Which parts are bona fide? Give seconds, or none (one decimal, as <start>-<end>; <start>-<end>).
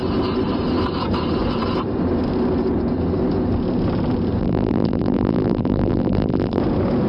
0.0-4.4; 6.6-7.1